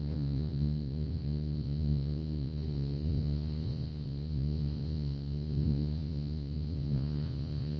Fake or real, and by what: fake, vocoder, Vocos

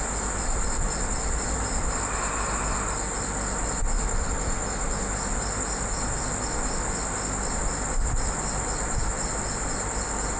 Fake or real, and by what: real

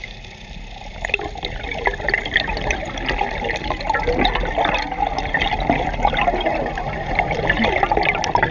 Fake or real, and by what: real